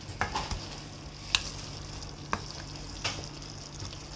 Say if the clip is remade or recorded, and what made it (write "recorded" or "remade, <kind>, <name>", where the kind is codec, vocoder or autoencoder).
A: recorded